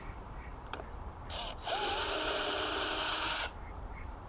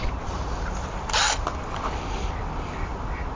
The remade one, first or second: first